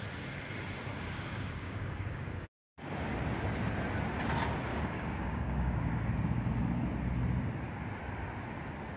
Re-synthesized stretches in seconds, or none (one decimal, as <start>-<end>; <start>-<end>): 0.9-2.7; 4.7-5.9